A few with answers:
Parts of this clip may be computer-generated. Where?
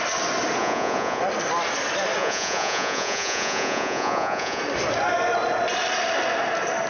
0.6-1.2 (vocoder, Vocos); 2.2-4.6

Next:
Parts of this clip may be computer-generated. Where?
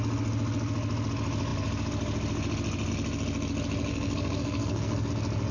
3.9-5.1 (codec, SNAC)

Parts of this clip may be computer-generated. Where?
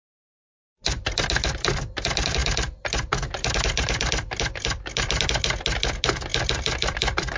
6.3-7.0 (vocoder, BigVGAN v2)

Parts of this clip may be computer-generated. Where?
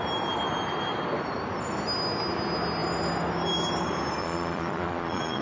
4.2-5.4 (vocoder, Vocos)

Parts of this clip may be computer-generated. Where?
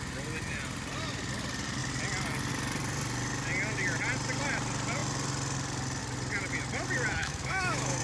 7.2-8.0 (autoencoder, DAC-VAE)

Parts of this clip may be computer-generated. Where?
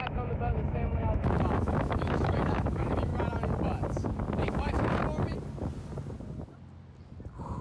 0.0-3.1 (autoencoder, DAC-VAE); 4.4-5.0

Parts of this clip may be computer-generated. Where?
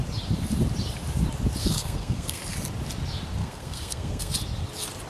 1.6-2.4 (codec, SNAC); 3.4-4.3